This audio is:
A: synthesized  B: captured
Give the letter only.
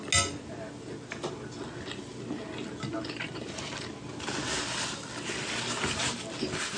B